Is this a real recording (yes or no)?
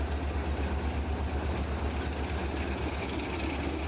yes